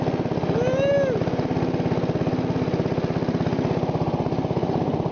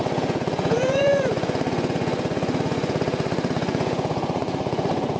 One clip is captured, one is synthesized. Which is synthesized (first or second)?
second